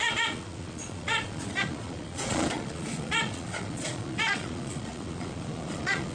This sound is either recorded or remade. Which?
remade